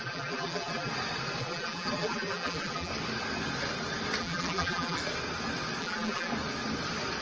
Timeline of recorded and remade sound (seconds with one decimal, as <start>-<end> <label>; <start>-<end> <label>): 0.0-0.9 remade; 0.9-1.4 recorded; 1.4-2.9 remade; 2.9-4.2 recorded; 4.2-5.0 remade; 5.0-5.8 recorded; 5.8-6.3 remade; 6.3-7.2 recorded